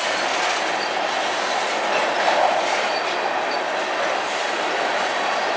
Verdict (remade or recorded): recorded